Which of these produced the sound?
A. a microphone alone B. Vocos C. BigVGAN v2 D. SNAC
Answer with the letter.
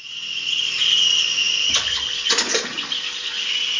A